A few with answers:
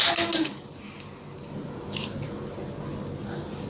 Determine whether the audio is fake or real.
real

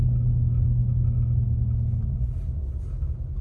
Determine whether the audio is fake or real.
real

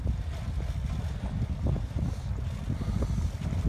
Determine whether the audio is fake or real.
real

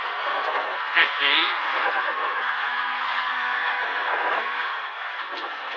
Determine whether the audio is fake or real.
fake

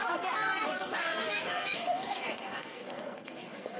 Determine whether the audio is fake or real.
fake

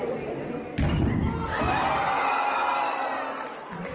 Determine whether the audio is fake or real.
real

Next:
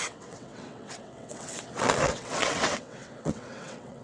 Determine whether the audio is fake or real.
fake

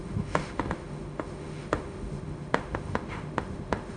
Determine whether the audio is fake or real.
fake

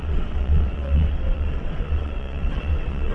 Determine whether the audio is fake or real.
fake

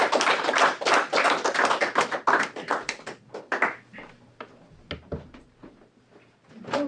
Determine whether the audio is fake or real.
real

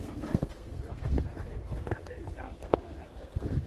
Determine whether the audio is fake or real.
fake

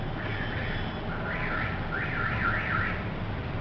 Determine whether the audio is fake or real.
real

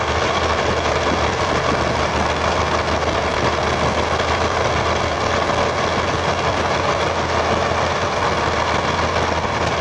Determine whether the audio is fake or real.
real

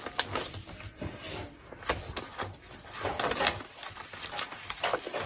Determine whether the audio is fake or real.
real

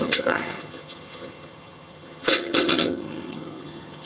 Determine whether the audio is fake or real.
fake